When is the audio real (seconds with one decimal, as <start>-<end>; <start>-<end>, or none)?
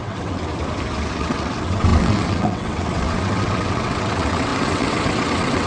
0.5-1.1